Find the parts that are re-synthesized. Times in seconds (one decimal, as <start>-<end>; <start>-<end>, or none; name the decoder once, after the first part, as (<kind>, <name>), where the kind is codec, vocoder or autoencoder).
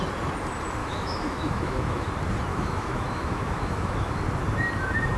0.8-2.1 (autoencoder, DAC-VAE); 2.5-4.1